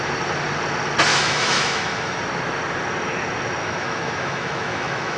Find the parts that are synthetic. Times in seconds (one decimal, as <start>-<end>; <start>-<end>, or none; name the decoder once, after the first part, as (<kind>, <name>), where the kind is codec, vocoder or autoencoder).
1.1-2.2 (autoencoder, DAC-VAE); 3.6-5.2